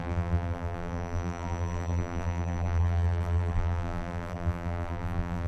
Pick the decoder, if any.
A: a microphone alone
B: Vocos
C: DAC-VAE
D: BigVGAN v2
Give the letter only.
D